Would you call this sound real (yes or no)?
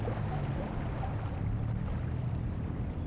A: yes